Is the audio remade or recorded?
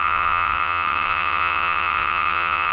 remade